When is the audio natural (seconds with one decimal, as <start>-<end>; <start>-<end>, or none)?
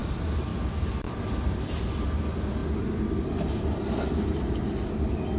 0.0-5.4